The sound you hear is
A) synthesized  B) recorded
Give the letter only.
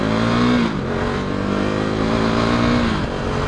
B